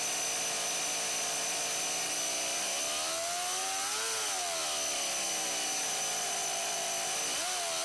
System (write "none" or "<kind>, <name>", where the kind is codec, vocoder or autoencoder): none